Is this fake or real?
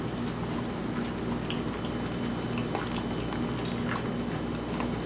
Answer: real